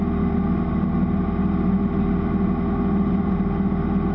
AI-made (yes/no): no